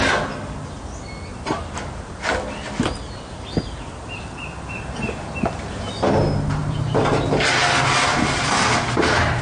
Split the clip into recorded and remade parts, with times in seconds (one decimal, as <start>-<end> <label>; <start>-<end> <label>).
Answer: 0.0-1.3 recorded; 1.3-2.2 remade; 2.2-6.6 recorded; 6.6-7.2 remade; 7.2-8.1 recorded; 8.1-9.4 remade

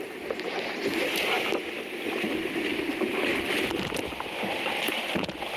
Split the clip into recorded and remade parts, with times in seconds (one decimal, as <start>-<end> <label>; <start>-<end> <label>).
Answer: 0.0-5.6 recorded